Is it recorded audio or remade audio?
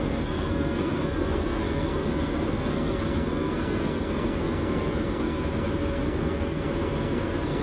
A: remade